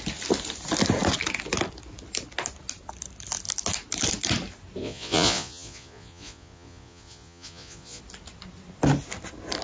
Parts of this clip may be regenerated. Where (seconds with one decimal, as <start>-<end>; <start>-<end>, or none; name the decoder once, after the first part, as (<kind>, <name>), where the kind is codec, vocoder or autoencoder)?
4.8-8.0 (vocoder, Vocos)